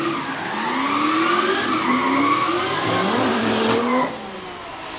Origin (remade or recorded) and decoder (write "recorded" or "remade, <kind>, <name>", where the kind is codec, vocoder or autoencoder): recorded